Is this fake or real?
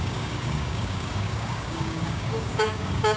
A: fake